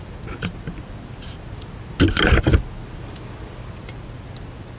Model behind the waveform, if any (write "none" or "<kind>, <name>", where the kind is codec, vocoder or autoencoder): none